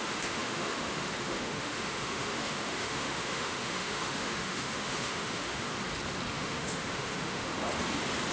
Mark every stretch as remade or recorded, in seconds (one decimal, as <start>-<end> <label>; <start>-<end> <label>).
0.0-5.7 remade; 5.7-6.3 recorded; 6.3-7.5 remade; 7.5-8.3 recorded